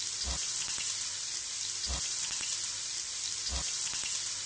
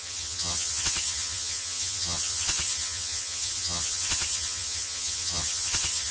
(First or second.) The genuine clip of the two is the first